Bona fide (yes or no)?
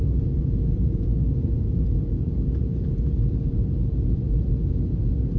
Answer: no